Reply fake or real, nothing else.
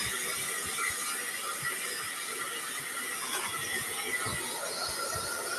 real